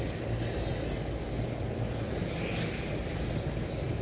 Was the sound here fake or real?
real